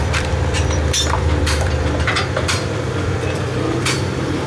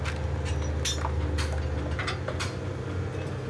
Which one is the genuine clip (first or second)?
second